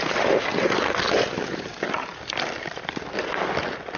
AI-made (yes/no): no